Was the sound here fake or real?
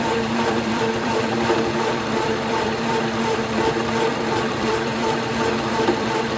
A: fake